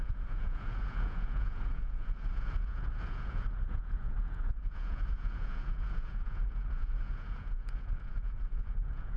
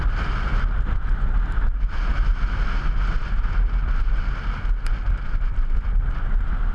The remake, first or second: first